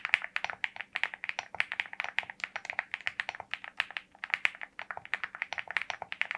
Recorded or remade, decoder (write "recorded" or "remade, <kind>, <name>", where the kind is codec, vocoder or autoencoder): recorded